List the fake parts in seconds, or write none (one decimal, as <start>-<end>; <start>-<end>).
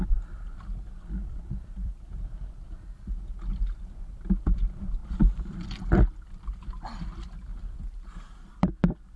1.2-2.6; 5.0-9.2